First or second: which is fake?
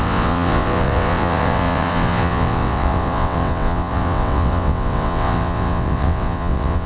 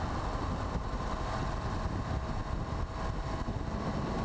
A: first